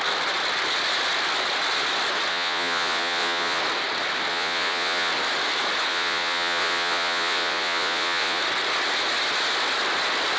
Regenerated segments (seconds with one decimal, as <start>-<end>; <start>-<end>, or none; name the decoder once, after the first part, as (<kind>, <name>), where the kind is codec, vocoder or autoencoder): 2.3-3.6 (vocoder, Vocos); 4.3-5.1; 5.9-8.4